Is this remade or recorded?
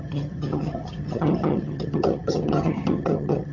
remade